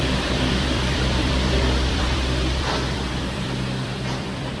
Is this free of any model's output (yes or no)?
no